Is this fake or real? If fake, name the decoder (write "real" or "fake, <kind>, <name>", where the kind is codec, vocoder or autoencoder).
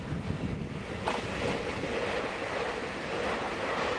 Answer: real